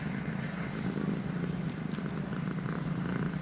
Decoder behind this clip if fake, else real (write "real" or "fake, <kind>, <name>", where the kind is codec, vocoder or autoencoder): real